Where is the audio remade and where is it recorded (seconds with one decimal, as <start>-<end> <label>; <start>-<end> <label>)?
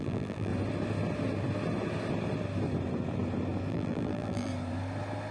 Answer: 0.0-0.5 remade; 0.5-3.7 recorded; 3.7-4.5 remade; 4.5-5.3 recorded